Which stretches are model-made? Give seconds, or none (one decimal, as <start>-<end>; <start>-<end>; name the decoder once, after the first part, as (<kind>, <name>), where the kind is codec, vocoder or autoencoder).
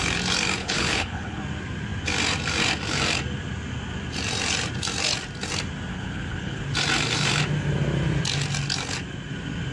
0.6-1.4 (codec, HILCodec); 5.9-6.6